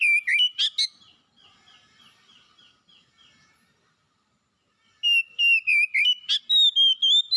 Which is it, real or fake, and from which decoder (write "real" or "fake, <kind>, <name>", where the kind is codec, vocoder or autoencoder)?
real